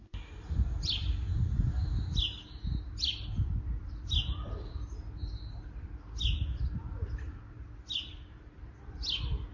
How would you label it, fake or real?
real